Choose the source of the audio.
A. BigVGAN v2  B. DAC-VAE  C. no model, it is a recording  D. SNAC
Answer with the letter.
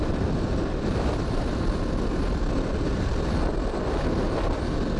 A